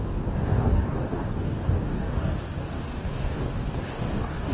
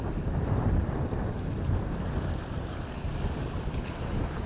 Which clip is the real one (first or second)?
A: second